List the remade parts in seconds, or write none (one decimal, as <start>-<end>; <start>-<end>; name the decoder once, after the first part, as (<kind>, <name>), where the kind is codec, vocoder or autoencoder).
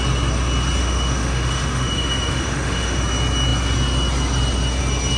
0.8-3.0 (autoencoder, DAC-VAE)